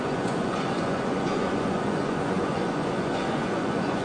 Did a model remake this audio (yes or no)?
yes